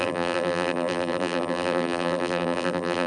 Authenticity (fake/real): fake